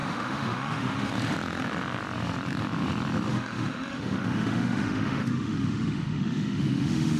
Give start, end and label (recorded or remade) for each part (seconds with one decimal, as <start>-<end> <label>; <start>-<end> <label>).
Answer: 0.0-1.1 remade; 1.1-3.3 recorded; 3.3-7.2 remade